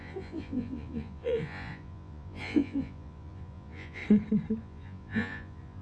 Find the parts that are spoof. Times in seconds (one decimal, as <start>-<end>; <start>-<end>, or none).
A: 0.0-4.0; 4.6-5.8